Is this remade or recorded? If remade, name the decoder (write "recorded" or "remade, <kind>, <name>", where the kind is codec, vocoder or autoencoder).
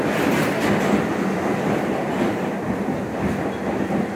recorded